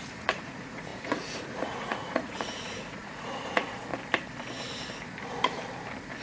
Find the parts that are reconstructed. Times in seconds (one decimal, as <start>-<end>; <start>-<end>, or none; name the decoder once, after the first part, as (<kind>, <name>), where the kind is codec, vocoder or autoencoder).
0.0-3.9 (vocoder, Vocos)